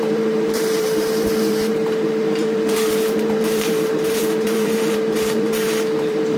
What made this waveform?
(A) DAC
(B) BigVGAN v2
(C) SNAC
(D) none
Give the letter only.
B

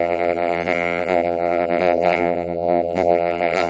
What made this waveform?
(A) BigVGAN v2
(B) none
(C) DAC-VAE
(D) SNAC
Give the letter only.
A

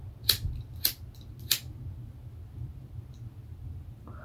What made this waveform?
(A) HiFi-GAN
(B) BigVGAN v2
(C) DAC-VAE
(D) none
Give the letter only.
D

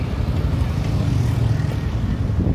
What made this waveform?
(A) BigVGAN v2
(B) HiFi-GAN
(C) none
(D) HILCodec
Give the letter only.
C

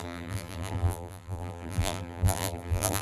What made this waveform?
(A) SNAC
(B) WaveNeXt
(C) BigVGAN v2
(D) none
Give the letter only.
C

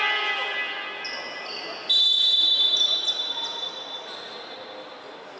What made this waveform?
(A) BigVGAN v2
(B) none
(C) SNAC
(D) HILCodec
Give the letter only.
B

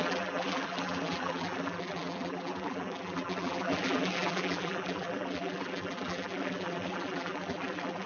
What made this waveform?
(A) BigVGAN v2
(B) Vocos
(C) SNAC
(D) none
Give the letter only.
A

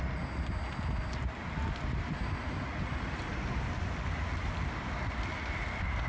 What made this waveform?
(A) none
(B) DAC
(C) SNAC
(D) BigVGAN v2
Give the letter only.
A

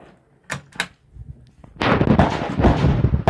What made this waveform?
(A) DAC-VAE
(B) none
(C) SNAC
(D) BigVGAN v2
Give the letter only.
B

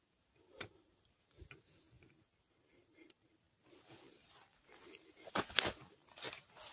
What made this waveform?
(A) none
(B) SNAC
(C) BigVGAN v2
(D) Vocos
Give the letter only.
C